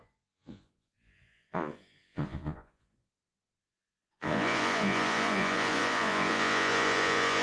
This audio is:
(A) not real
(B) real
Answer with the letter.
A